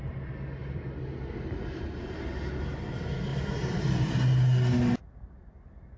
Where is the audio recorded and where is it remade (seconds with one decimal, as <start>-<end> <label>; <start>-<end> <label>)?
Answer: 0.0-3.3 recorded; 3.3-4.1 remade; 4.1-6.0 recorded